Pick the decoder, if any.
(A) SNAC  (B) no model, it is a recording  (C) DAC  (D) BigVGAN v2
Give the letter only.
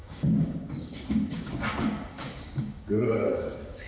C